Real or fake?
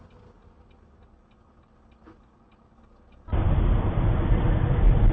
real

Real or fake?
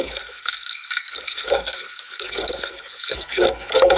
fake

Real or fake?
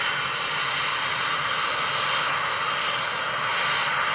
real